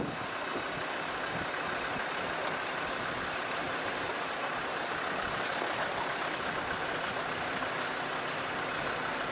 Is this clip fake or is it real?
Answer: real